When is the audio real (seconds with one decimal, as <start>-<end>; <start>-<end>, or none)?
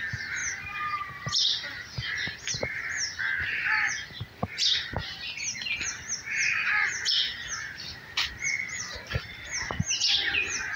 0.0-10.8